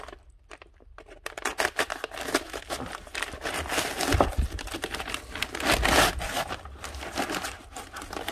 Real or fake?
real